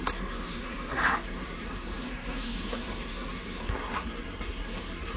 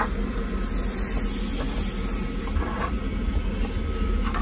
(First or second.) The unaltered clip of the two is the second